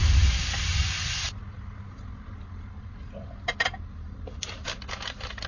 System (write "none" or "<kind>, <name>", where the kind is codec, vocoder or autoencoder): none